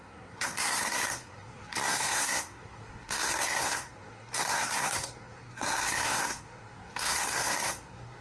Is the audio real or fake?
fake